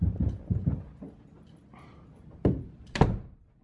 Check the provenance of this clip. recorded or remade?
recorded